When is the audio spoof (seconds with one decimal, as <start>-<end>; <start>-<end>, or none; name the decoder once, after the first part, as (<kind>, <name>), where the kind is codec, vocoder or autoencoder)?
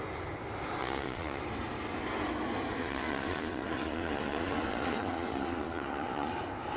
0.8-1.4 (vocoder, Vocos); 2.8-6.3